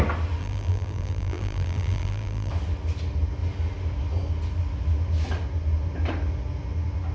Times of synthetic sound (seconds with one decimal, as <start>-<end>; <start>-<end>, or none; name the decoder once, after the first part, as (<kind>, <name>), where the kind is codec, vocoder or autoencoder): 0.4-2.5 (vocoder, BigVGAN v2)